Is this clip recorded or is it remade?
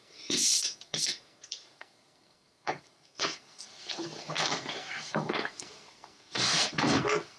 remade